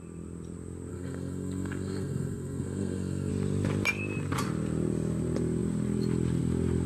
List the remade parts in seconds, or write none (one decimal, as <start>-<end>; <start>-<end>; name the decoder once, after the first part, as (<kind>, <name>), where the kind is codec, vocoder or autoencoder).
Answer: 0.9-3.3 (codec, SNAC)